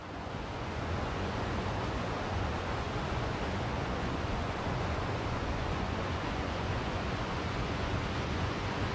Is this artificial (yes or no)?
yes